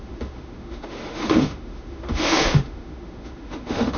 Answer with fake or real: fake